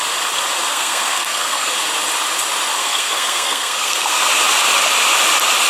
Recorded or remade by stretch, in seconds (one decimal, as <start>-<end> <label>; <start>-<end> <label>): 0.0-0.7 recorded; 0.7-1.7 remade; 1.7-2.8 recorded; 2.8-4.3 remade; 4.3-5.7 recorded